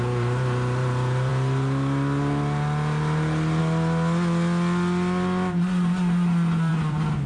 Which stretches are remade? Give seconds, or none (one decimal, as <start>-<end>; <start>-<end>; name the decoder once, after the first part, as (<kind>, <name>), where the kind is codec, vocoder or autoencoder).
none